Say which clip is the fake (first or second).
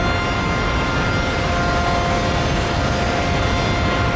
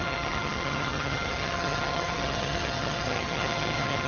second